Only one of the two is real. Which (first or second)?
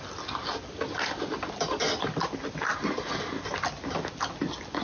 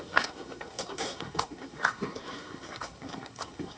first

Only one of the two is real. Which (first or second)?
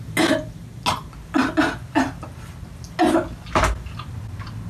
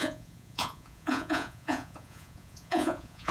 first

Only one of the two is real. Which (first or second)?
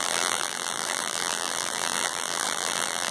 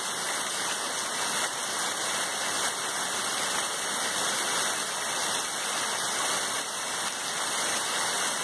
second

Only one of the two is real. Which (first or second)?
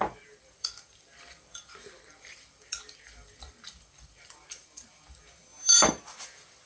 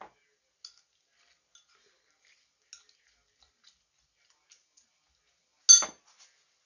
second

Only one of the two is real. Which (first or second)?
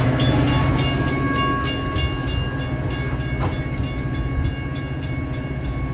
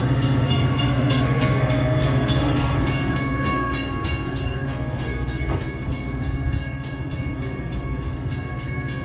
first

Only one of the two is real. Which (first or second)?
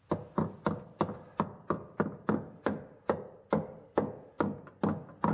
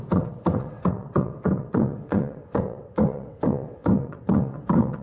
first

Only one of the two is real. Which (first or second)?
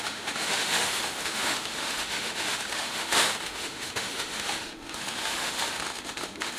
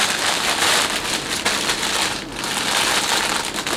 second